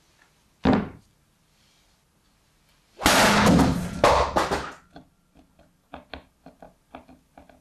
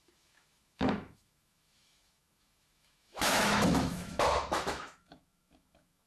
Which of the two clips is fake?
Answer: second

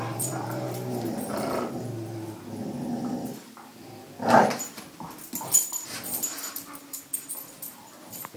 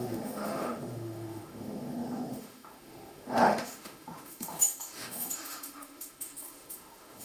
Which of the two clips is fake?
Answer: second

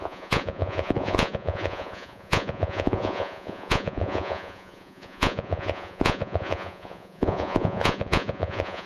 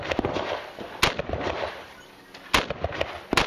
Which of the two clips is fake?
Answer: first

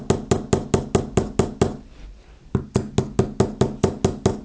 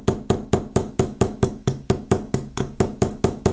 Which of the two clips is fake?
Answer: second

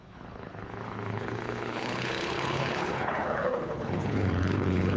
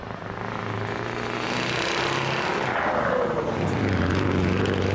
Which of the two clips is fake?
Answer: first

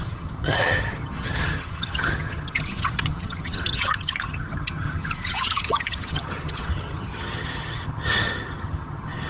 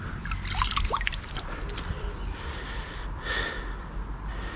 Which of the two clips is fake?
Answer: first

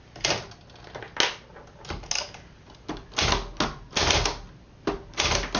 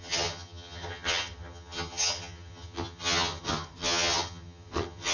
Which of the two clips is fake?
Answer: second